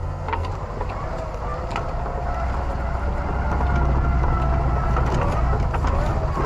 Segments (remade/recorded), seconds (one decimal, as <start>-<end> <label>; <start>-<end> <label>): 0.0-0.5 remade; 0.5-6.5 recorded